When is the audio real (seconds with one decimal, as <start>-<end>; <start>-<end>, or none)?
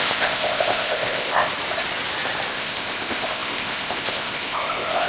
1.5-2.5